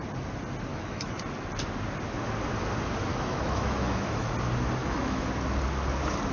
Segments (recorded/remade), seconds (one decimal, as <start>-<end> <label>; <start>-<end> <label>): 0.0-0.7 recorded; 0.7-1.2 remade; 1.2-3.1 recorded; 3.1-4.3 remade; 4.3-4.8 recorded; 4.8-5.3 remade; 5.3-6.3 recorded